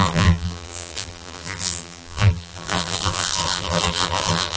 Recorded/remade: remade